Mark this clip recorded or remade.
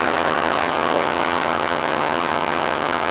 remade